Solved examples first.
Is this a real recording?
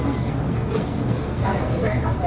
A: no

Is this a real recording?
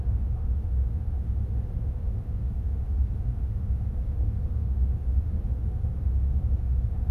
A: no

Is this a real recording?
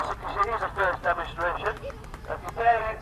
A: yes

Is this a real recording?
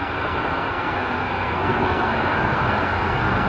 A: no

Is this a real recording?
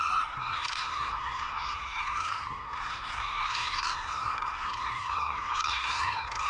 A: no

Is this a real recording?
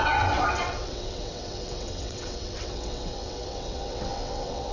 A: no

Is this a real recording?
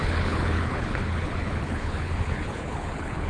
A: no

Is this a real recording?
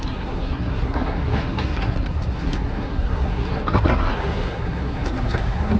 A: no